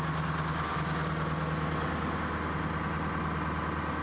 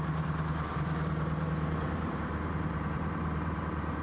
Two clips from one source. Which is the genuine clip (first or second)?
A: first